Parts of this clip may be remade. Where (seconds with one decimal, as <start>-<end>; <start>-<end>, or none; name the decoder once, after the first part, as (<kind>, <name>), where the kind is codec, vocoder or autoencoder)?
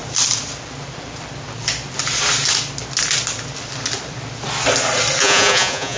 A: 5.2-6.0 (vocoder, Vocos)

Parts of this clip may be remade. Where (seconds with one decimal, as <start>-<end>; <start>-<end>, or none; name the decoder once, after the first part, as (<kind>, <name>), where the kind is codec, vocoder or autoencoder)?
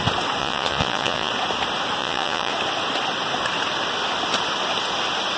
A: 0.4-1.3 (vocoder, Vocos); 2.0-2.5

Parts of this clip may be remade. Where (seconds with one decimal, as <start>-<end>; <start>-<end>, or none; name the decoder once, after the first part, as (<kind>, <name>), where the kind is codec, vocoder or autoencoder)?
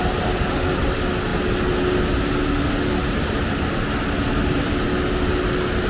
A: none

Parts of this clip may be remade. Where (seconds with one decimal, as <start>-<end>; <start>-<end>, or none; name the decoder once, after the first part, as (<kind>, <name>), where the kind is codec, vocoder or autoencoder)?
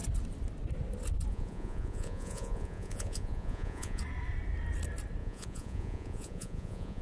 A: 1.3-4.0 (vocoder, Vocos); 5.2-7.0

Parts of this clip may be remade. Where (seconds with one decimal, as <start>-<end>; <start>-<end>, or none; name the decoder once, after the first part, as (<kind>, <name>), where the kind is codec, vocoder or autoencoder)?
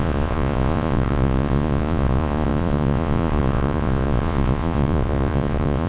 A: 0.0-5.9 (vocoder, Vocos)